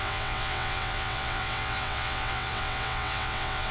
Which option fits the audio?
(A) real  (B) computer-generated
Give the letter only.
B